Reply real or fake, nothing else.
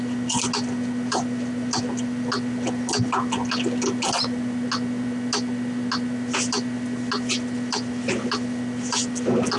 real